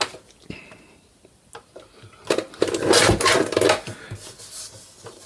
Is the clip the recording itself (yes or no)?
yes